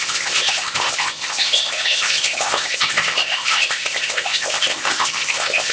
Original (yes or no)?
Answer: no